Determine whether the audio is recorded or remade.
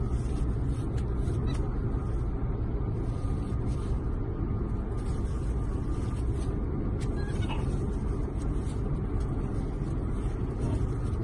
recorded